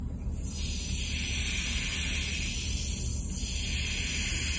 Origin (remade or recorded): recorded